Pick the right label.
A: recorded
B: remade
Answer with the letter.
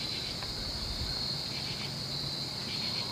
A